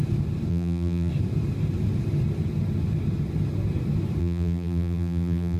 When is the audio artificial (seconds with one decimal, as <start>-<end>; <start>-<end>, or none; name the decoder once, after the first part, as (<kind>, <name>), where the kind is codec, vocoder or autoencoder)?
0.5-1.1 (vocoder, BigVGAN v2); 4.2-5.6

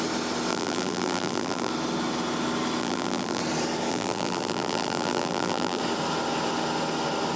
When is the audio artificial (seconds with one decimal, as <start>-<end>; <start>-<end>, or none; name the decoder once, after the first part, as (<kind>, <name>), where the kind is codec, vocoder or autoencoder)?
0.5-1.7 (vocoder, BigVGAN v2); 2.8-3.4; 3.9-5.8

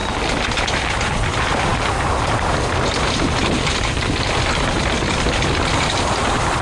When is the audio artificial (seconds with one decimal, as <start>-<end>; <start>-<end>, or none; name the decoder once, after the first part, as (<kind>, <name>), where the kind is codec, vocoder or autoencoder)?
0.7-6.6 (vocoder, BigVGAN v2)

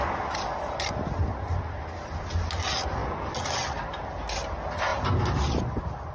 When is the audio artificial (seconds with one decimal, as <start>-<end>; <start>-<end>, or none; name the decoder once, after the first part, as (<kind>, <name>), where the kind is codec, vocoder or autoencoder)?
none

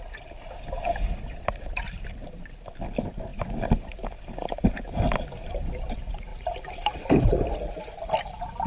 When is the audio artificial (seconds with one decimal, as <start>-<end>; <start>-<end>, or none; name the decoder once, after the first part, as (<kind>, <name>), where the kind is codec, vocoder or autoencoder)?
6.3-7.2 (vocoder, BigVGAN v2)

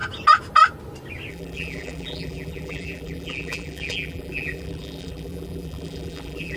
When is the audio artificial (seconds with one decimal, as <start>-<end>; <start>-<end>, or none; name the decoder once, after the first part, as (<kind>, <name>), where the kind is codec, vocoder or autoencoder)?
1.3-6.6 (vocoder, BigVGAN v2)